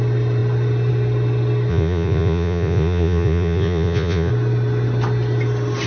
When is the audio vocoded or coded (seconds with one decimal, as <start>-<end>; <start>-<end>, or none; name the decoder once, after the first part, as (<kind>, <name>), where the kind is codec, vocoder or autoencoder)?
1.7-4.3 (vocoder, Vocos)